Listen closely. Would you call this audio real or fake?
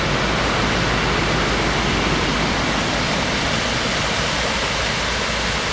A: real